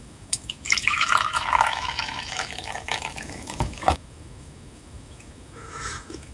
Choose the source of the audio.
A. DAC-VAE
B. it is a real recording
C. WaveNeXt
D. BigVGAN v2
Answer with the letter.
A